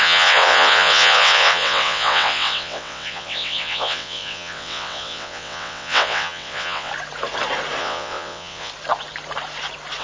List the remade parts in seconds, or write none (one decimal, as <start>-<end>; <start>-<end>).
0.0-6.9; 7.8-8.7